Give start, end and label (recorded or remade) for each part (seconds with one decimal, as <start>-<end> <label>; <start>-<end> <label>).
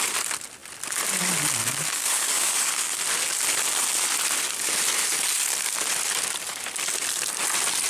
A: 0.0-1.6 recorded; 1.6-3.0 remade; 3.0-7.9 recorded